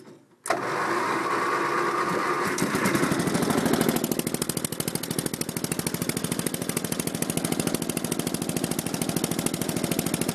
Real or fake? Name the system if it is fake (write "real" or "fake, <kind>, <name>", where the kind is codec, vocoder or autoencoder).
real